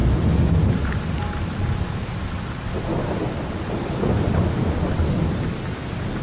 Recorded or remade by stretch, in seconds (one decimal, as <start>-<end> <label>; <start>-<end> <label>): 0.0-6.2 recorded